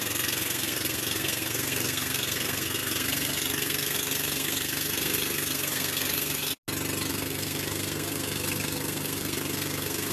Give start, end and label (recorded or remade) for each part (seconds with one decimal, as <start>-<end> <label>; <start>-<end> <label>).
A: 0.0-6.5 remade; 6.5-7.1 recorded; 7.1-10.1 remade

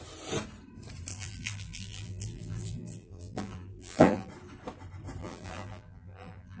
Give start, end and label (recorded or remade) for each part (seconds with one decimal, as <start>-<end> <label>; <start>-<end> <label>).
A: 0.0-1.1 recorded; 1.1-4.3 remade; 4.3-5.2 recorded; 5.2-6.6 remade

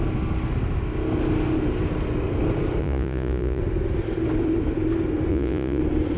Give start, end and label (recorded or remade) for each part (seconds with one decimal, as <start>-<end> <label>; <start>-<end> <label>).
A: 0.0-2.8 recorded; 2.8-3.6 remade; 3.6-5.3 recorded; 5.3-5.8 remade; 5.8-6.2 recorded

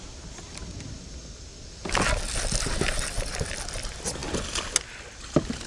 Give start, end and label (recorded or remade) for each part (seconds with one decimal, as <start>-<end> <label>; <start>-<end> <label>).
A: 0.0-5.7 recorded

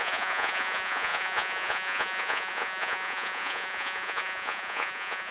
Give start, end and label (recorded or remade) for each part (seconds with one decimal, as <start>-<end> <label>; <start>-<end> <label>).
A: 0.0-5.3 remade

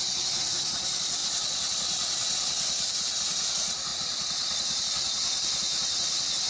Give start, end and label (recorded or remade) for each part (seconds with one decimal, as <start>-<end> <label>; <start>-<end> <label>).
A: 0.0-6.5 recorded

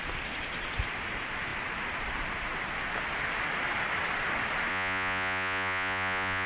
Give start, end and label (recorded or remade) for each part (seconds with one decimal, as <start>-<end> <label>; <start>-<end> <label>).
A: 0.0-4.7 recorded; 4.7-6.5 remade

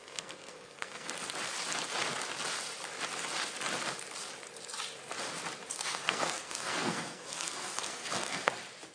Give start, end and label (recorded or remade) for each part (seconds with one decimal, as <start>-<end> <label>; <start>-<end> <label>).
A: 0.0-1.1 remade; 1.1-5.7 recorded; 5.7-8.5 remade; 8.5-8.9 recorded